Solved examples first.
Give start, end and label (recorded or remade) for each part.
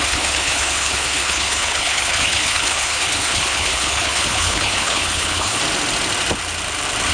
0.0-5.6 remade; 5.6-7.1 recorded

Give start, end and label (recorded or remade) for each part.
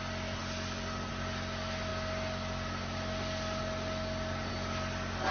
0.0-5.3 recorded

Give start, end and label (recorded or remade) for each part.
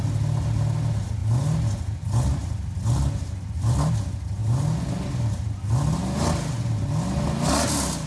0.0-8.1 recorded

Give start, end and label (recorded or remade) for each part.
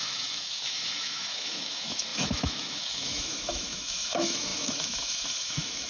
0.0-5.9 remade